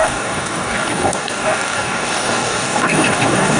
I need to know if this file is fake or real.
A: fake